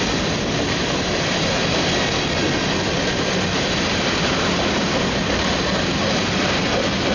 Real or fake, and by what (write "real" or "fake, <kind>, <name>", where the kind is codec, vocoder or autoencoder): real